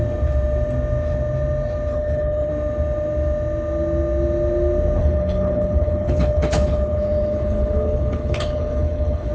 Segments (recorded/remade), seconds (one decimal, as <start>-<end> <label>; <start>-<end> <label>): 0.0-1.9 recorded; 1.9-2.5 remade; 2.5-5.0 recorded; 5.0-9.3 remade